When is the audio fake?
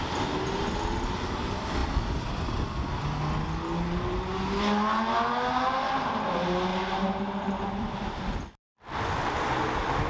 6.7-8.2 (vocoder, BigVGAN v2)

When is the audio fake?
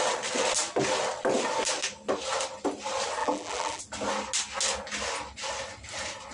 3.2-3.8 (vocoder, BigVGAN v2)